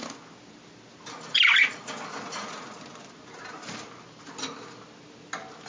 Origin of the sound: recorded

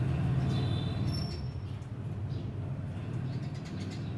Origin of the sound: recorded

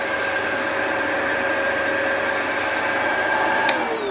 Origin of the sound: recorded